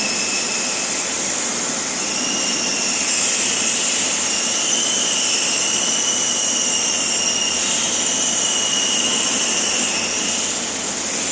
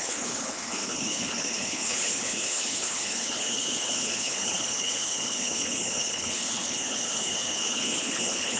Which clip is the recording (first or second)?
first